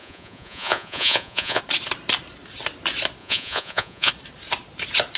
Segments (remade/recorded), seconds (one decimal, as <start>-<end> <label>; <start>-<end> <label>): 0.0-1.6 remade; 1.6-3.2 recorded; 3.2-4.1 remade; 4.1-5.2 recorded